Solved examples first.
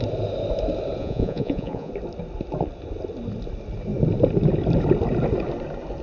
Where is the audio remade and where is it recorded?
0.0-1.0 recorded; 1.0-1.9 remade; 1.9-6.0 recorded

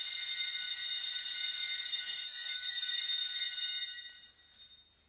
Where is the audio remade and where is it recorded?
0.0-1.9 recorded; 1.9-3.0 remade; 3.0-5.1 recorded

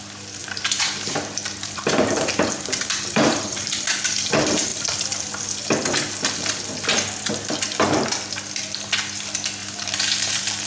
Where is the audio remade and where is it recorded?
0.0-0.4 recorded; 0.4-3.7 remade; 3.7-9.6 recorded; 9.6-10.7 remade

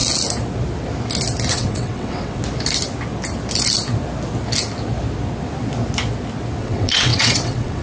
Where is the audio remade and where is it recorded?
0.0-1.5 recorded; 1.5-2.4 remade; 2.4-6.6 recorded; 6.6-7.8 remade

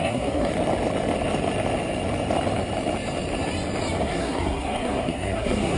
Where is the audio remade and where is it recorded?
0.0-0.5 remade; 0.5-4.0 recorded; 4.0-5.8 remade

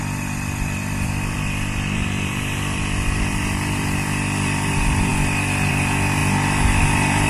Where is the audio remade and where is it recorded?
0.0-5.1 remade; 5.1-5.7 recorded; 5.7-6.2 remade; 6.2-6.8 recorded; 6.8-7.3 remade

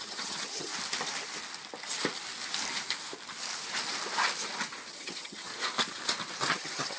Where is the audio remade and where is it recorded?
0.0-0.7 remade; 0.7-4.9 recorded; 4.9-5.5 remade; 5.5-6.5 recorded; 6.5-7.0 remade